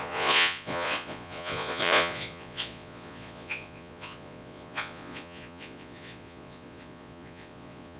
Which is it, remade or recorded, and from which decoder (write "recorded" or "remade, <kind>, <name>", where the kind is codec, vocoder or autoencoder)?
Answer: remade, vocoder, Vocos